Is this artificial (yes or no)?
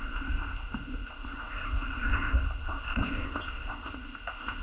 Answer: yes